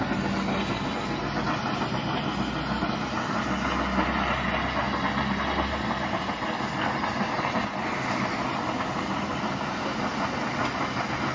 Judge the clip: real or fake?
real